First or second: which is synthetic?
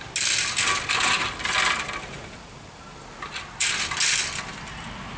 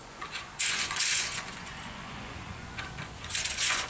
second